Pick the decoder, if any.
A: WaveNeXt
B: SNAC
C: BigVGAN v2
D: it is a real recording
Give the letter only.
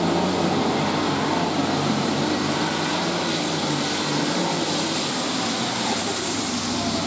D